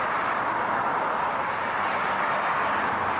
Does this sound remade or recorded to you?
recorded